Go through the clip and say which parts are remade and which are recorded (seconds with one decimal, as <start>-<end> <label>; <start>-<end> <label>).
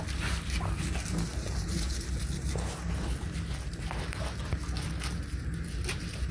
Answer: 0.0-6.3 recorded